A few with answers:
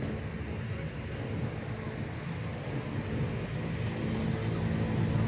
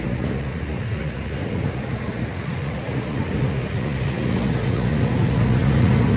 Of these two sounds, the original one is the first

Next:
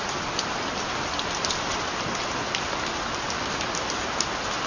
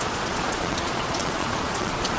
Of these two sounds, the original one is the first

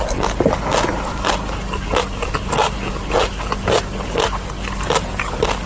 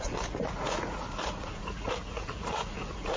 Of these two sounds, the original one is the first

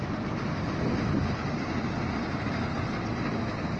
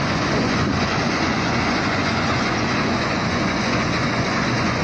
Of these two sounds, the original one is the first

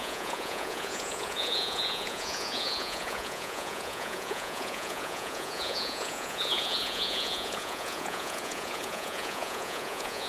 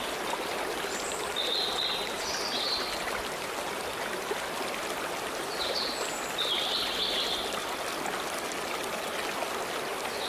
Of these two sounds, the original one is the second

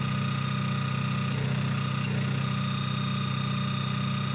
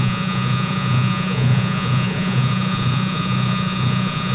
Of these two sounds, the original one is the first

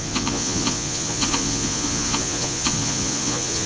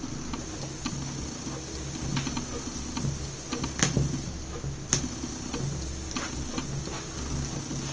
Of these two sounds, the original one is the second